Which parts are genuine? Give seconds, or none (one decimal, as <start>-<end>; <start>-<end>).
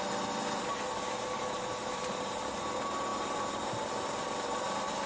0.0-5.1